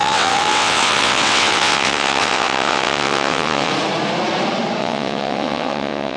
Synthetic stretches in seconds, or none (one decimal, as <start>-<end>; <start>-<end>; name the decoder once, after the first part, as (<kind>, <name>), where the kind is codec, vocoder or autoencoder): 0.0-3.7 (vocoder, WaveNeXt); 4.8-6.2

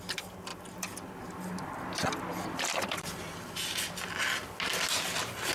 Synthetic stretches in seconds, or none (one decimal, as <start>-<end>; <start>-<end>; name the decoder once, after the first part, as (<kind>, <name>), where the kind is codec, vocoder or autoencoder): 0.5-1.7 (vocoder, BigVGAN v2); 2.3-3.8

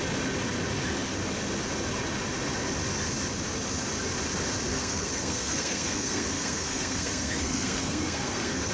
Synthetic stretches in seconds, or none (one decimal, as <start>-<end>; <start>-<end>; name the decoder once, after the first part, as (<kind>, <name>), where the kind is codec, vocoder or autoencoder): 4.7-8.7 (codec, SNAC)

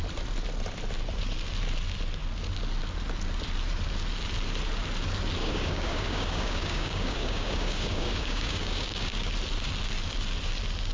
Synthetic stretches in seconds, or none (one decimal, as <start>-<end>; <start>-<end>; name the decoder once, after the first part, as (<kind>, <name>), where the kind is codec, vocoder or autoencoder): 5.4-9.3 (codec, DAC)

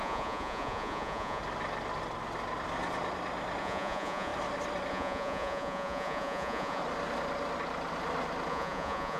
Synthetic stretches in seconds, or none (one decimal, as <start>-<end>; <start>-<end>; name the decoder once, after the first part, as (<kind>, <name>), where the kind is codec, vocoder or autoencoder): 0.0-1.4 (vocoder, Vocos); 3.6-4.3; 4.9-6.8; 8.5-9.2